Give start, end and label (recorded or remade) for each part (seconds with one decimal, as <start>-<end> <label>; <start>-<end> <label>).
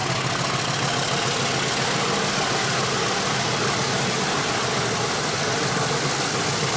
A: 0.0-6.8 recorded